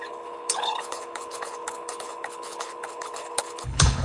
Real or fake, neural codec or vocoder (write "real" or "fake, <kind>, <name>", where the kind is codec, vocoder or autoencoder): fake, codec, HILCodec